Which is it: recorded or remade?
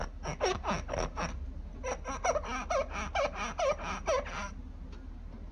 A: recorded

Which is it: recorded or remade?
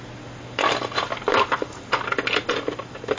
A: recorded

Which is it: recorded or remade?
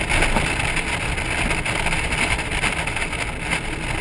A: recorded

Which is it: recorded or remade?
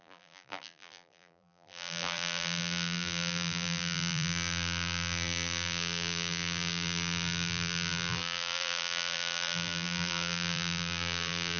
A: remade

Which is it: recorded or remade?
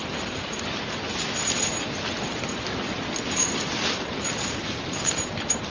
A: remade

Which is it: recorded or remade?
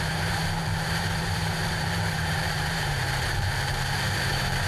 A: remade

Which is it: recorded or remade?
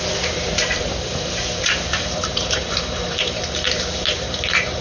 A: remade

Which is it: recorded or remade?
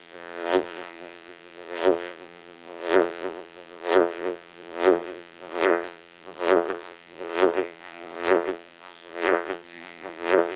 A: remade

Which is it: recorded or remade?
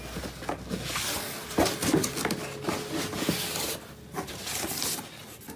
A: recorded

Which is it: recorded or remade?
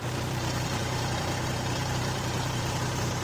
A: remade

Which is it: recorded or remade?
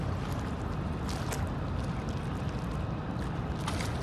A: recorded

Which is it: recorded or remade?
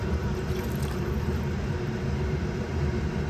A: remade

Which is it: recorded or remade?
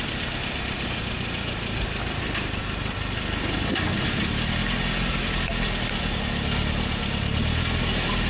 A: recorded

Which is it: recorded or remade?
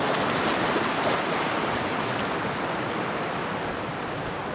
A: recorded